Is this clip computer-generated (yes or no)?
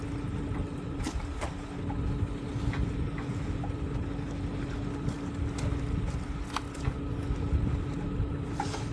no